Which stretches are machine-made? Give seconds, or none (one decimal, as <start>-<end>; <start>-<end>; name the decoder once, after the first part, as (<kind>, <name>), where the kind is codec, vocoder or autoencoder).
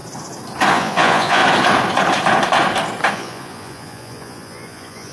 0.7-1.4 (vocoder, Vocos); 3.1-5.1